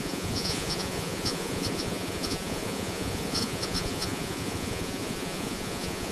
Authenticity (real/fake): fake